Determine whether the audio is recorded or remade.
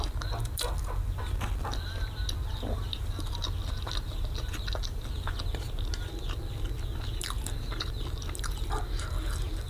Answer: recorded